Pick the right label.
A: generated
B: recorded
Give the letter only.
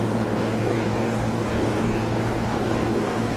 A